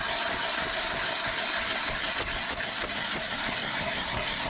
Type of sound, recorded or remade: recorded